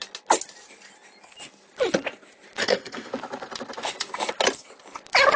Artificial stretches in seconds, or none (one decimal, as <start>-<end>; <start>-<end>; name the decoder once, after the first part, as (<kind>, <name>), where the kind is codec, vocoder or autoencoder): 2.6-3.1 (codec, SNAC)